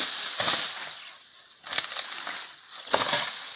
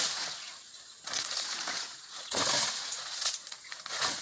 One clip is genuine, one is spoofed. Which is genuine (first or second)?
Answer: first